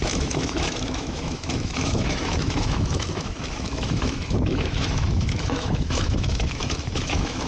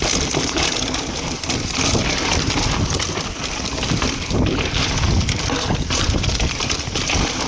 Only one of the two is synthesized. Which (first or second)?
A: first